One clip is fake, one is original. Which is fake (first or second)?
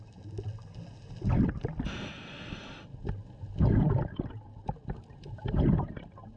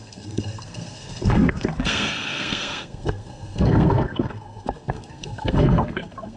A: second